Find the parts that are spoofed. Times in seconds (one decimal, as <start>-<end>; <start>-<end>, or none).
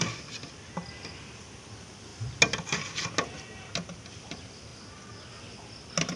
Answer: none